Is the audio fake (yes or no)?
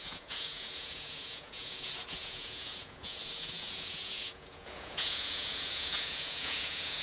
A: yes